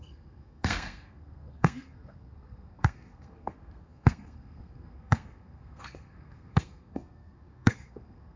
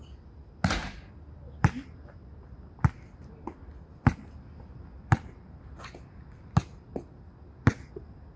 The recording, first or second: second